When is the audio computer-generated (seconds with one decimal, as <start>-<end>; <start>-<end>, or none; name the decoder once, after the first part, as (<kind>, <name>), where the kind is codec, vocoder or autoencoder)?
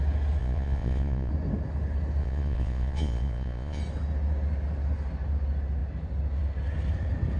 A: 0.4-1.3 (vocoder, Vocos); 2.2-3.8